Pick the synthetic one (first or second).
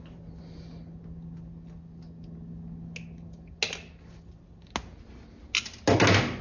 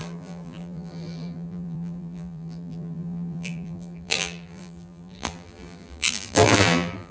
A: second